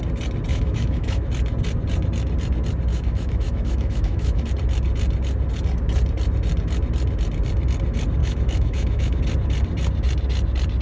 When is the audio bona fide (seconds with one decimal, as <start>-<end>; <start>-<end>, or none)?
0.0-0.5; 1.3-2.9; 4.5-8.2; 9.2-10.8